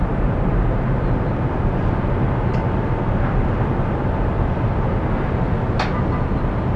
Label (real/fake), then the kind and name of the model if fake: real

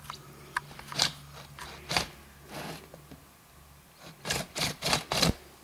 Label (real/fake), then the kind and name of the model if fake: real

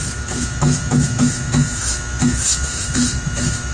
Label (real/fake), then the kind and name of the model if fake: fake, autoencoder, DAC-VAE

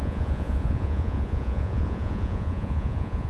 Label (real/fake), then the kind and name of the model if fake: fake, vocoder, Vocos